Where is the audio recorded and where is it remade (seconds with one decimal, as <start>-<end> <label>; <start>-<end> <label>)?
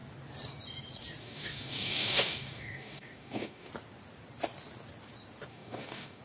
0.0-1.2 recorded; 1.2-3.7 remade; 3.7-5.5 recorded; 5.5-6.2 remade